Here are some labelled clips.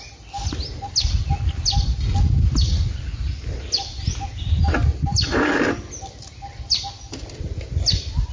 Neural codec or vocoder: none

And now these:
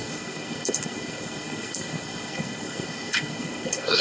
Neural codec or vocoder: codec, SNAC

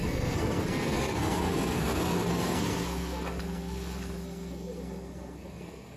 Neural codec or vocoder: codec, SNAC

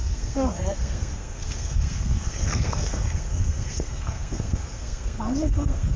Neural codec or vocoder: codec, SNAC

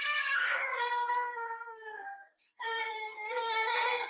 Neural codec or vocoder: codec, SNAC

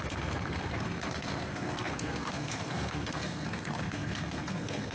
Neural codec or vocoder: codec, SNAC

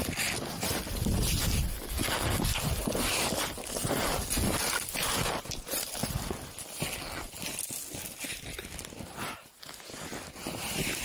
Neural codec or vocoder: none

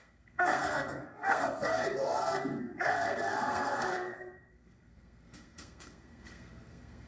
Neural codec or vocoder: codec, SNAC